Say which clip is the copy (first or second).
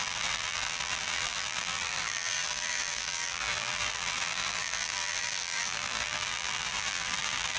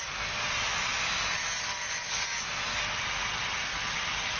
first